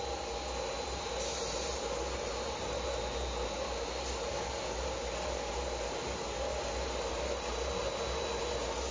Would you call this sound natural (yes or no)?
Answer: yes